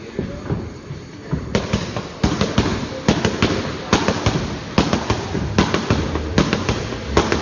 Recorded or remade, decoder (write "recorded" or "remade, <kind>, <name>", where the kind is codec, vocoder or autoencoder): recorded